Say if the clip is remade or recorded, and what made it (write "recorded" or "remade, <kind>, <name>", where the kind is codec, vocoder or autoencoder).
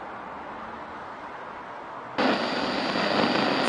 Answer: recorded